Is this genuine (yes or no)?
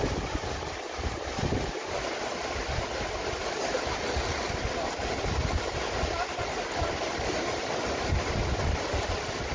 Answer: yes